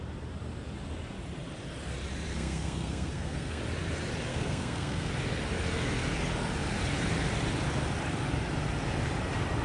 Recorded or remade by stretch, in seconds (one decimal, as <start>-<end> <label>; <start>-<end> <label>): 0.0-2.3 recorded; 2.3-3.6 remade; 3.6-4.3 recorded; 4.3-5.1 remade; 5.1-9.6 recorded